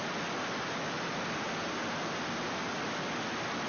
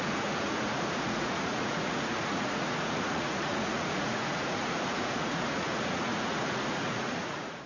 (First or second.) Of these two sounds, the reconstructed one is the second